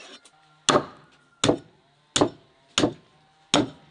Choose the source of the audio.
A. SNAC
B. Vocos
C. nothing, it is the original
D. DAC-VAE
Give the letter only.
C